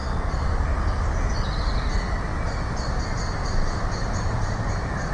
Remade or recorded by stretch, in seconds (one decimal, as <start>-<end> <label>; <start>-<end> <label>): 0.0-5.1 recorded